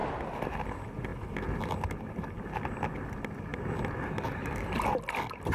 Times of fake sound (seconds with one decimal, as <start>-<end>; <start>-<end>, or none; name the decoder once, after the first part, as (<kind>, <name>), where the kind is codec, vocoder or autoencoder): none